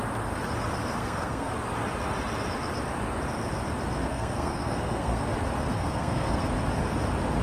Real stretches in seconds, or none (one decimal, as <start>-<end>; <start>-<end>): 0.0-1.0; 1.5-4.1; 5.3-5.7; 6.4-7.4